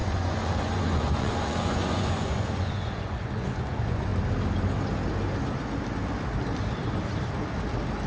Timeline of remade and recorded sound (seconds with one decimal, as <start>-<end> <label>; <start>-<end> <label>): 0.0-4.1 remade; 4.1-8.1 recorded